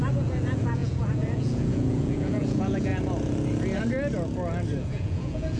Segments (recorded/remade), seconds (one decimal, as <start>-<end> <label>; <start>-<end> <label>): 0.0-2.9 remade; 2.9-4.8 recorded; 4.8-5.6 remade